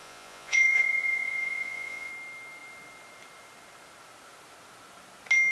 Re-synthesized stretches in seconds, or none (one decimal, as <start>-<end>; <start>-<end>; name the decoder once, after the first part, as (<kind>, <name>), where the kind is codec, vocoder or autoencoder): 0.0-2.1 (vocoder, Vocos)